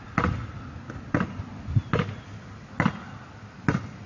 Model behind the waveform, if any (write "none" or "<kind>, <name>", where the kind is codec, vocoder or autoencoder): none